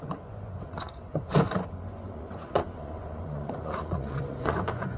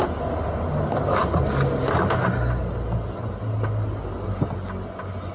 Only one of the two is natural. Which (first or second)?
second